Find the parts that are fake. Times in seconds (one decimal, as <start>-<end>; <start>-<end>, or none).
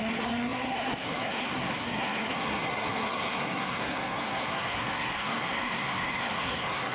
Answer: 0.0-6.9